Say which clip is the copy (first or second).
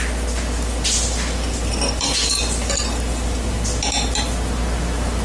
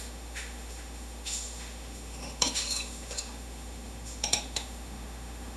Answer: second